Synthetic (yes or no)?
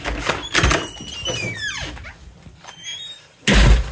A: no